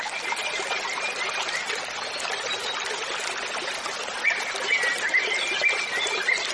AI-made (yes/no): no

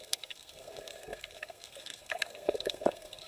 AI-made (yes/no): yes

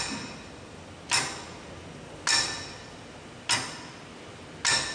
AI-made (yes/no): no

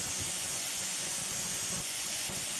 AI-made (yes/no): yes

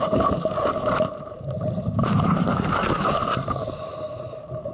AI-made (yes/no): yes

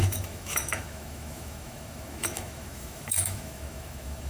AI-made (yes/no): yes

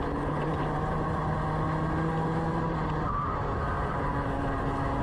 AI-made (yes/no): no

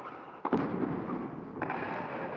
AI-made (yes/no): no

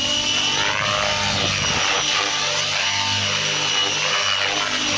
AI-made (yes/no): no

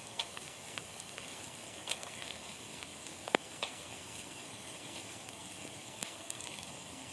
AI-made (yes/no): yes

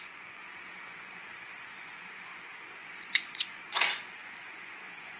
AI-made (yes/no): yes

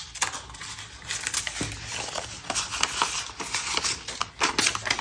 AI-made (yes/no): no